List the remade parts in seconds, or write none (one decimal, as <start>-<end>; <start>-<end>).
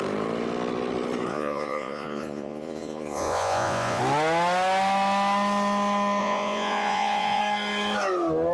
1.3-4.0; 6.2-7.4